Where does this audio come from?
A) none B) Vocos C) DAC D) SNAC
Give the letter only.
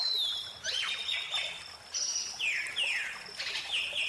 A